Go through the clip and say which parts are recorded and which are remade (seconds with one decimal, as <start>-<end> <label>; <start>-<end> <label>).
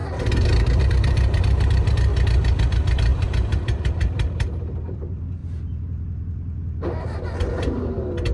0.0-2.1 remade; 2.1-2.7 recorded; 2.7-5.4 remade; 5.4-7.6 recorded; 7.6-8.3 remade